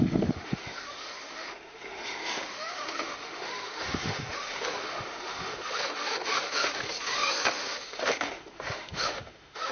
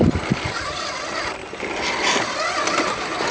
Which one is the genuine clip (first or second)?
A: second